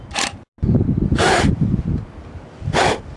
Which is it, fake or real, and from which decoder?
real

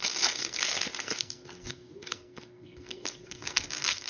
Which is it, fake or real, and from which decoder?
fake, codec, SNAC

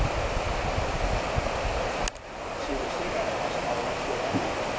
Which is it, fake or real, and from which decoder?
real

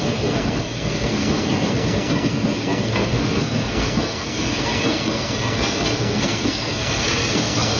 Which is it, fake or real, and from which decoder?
fake, codec, SNAC